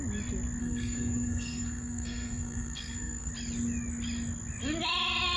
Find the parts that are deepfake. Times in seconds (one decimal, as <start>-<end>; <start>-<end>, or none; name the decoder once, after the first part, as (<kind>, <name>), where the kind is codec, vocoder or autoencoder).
0.6-3.3 (codec, SNAC)